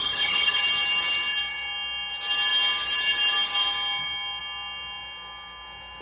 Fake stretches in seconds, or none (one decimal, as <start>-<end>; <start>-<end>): 0.0-0.6